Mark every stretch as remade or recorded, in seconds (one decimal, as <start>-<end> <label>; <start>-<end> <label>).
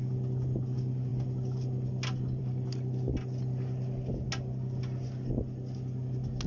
0.0-6.5 recorded